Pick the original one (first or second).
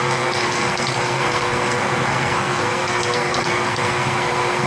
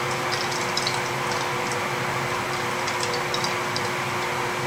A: second